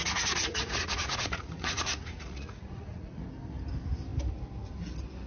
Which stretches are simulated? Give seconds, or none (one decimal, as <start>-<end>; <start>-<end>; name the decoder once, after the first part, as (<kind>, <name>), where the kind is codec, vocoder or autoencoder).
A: 0.0-3.2 (vocoder, Vocos)